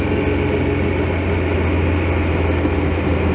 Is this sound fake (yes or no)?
no